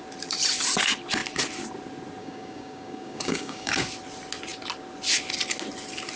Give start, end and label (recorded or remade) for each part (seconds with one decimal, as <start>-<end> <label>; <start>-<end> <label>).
0.0-2.2 recorded; 2.2-3.7 remade; 3.7-6.2 recorded